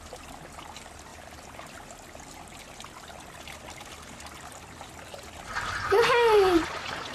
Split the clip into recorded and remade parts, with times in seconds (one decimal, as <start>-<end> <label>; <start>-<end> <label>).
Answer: 0.0-7.1 recorded